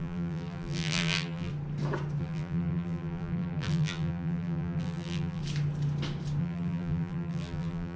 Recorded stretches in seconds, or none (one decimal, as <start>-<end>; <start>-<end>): 1.5-2.2; 5.4-6.4